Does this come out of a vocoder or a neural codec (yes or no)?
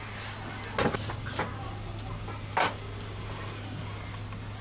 no